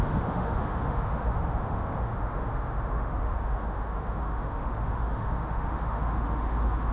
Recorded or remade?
remade